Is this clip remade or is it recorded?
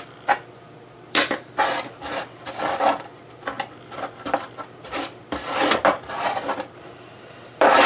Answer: remade